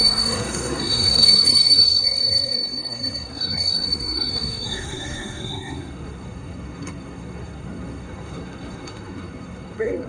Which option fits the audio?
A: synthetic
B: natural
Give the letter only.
A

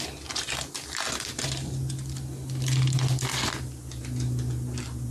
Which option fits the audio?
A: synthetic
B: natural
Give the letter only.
B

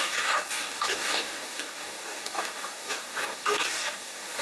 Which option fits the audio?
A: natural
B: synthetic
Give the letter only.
B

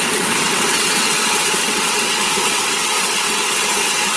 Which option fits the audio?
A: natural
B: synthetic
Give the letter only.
B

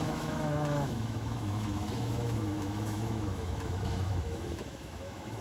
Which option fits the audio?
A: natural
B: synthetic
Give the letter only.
B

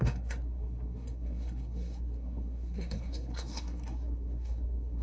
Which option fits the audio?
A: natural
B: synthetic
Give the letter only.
B